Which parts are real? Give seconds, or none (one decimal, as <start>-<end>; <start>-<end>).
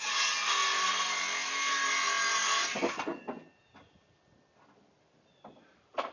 0.0-6.1